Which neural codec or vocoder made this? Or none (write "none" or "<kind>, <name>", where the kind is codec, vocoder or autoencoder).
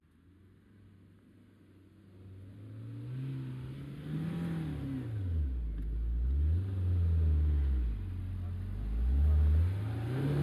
none